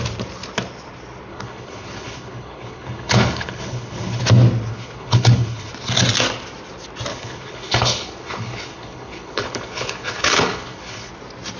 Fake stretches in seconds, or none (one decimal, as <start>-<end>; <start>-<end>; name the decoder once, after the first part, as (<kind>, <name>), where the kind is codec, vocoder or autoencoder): 1.3-4.2 (codec, HILCodec); 4.7-5.7; 7.1-11.1